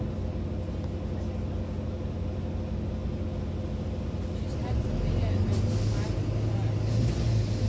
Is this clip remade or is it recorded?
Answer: recorded